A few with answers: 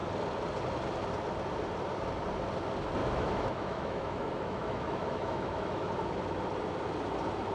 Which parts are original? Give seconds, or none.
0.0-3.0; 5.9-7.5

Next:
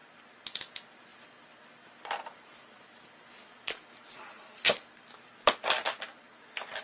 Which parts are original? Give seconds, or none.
0.0-6.8